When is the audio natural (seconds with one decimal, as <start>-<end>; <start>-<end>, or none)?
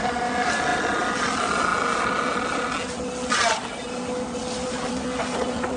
0.0-5.8